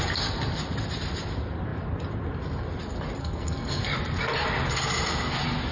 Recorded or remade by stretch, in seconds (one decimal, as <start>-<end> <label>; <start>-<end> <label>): 0.0-3.2 recorded; 3.2-3.8 remade; 3.8-5.7 recorded